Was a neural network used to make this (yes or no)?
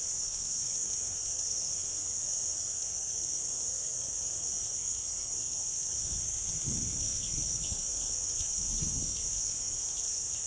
yes